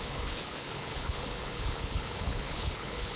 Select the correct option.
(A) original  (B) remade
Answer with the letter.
B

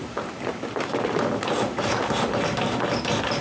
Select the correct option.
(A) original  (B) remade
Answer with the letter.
A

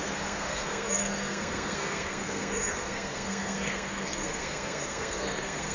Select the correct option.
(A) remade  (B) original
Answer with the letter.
A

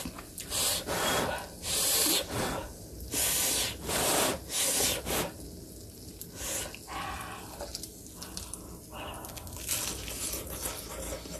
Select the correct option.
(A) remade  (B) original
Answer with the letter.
B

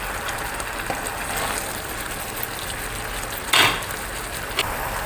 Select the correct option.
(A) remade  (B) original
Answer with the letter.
B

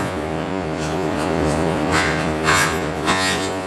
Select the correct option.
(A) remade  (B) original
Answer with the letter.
A